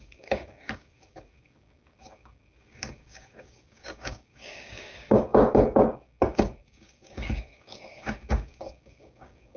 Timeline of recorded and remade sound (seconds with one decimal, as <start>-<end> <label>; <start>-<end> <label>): 0.0-9.6 remade